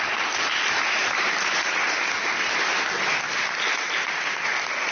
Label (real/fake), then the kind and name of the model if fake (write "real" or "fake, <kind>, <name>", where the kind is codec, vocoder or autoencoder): real